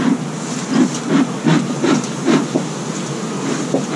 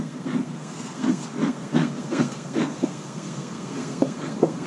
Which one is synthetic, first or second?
second